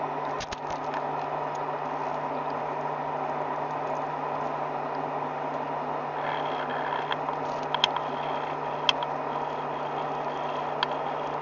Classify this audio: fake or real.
real